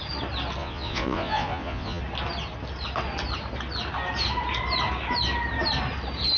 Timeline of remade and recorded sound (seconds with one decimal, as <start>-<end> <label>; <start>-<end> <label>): 0.0-0.6 recorded; 0.6-2.0 remade; 2.0-6.4 recorded